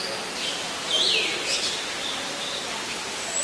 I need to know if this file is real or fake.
real